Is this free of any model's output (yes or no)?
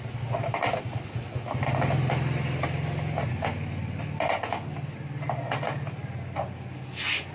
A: yes